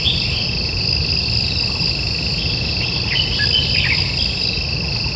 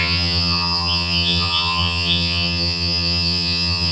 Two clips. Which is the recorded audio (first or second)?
first